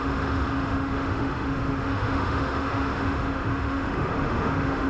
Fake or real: fake